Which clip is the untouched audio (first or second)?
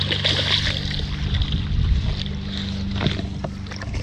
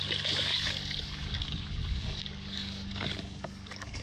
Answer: first